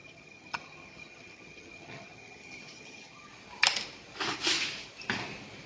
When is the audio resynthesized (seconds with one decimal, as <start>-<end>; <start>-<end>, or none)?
0.0-3.3